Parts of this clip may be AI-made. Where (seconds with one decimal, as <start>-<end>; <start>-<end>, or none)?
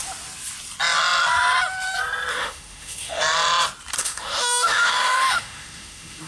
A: 2.3-3.2; 4.0-6.3